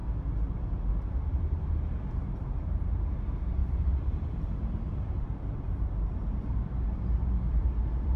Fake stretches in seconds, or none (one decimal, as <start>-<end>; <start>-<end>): 1.0-8.2